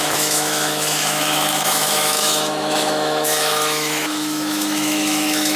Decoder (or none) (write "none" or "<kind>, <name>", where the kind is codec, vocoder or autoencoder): autoencoder, DAC-VAE